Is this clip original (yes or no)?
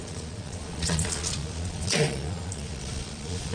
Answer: no